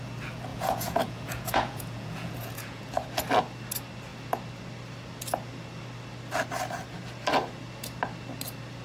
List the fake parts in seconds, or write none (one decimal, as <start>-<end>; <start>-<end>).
0.5-2.9